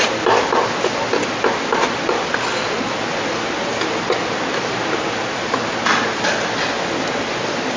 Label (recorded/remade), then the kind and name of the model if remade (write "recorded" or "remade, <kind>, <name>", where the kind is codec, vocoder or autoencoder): recorded